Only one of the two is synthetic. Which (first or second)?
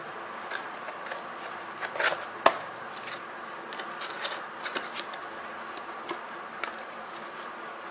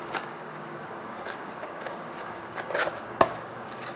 second